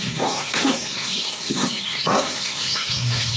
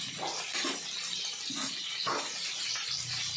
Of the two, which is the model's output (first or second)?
first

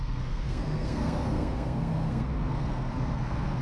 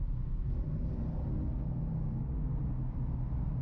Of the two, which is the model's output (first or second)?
first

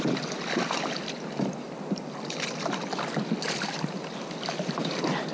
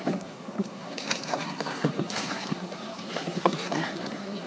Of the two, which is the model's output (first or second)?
second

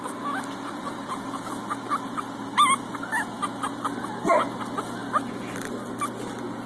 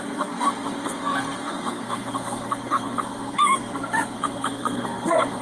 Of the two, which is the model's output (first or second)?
second